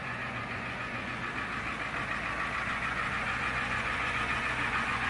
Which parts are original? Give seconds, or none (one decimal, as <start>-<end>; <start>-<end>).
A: 1.3-2.7